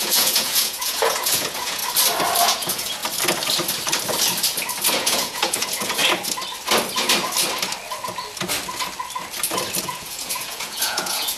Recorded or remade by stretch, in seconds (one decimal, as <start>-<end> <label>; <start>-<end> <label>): 0.0-1.8 remade; 1.8-2.4 recorded; 2.4-3.0 remade; 3.0-4.9 recorded; 4.9-6.0 remade; 6.0-9.8 recorded; 9.8-11.4 remade